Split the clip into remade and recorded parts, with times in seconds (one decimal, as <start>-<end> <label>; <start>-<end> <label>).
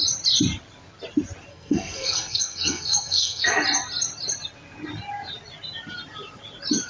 0.0-1.5 recorded; 1.5-3.6 remade; 3.6-6.9 recorded